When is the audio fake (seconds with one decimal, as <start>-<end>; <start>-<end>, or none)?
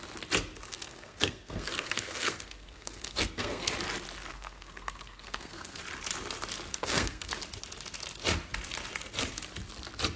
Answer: 0.7-3.7; 4.3-5.8; 6.7-7.3